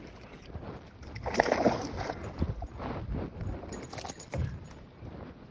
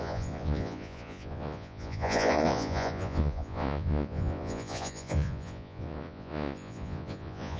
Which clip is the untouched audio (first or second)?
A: first